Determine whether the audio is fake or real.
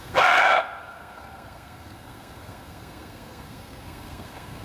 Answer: fake